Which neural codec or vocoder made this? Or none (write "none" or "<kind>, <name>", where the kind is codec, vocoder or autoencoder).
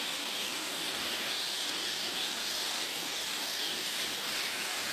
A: codec, DAC